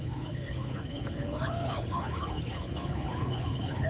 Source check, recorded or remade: remade